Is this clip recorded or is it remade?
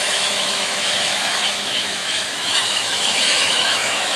remade